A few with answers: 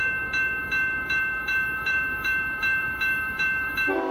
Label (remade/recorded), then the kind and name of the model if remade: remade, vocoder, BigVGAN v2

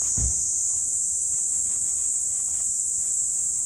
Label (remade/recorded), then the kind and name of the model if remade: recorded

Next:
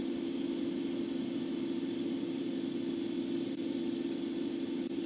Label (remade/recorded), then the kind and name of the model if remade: recorded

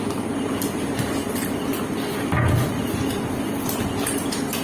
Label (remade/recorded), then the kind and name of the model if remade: recorded